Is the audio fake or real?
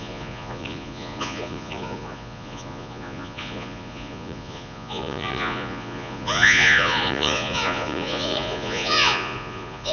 fake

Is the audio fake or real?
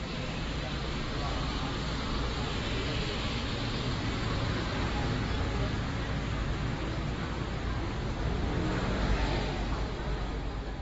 real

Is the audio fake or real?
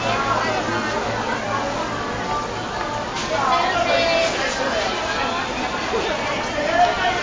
real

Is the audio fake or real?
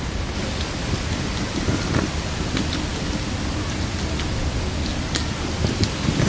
real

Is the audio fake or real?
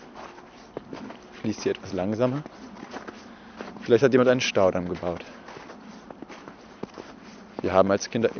real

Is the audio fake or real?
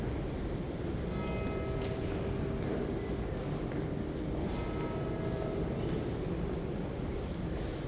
real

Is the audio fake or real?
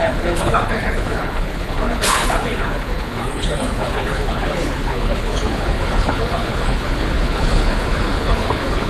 fake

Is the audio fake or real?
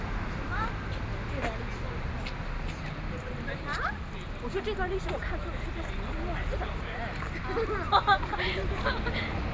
real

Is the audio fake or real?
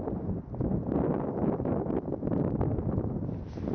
real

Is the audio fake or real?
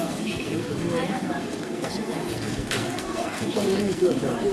fake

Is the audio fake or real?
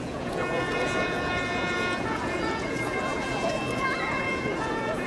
fake